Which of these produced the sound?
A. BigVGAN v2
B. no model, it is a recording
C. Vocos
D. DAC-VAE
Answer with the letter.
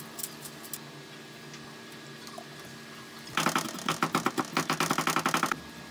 B